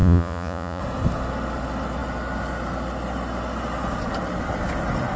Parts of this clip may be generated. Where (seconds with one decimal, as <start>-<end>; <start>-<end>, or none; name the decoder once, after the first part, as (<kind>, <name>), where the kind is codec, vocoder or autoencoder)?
0.0-0.8 (vocoder, Vocos)